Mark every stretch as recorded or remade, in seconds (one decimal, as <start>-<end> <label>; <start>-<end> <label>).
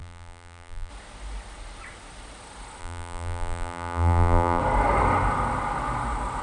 0.0-0.9 remade; 0.9-2.8 recorded; 2.8-4.6 remade; 4.6-6.4 recorded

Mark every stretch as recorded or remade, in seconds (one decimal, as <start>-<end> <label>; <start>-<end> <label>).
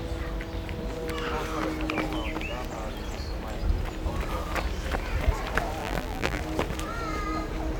0.0-5.8 recorded; 5.8-6.4 remade; 6.4-7.8 recorded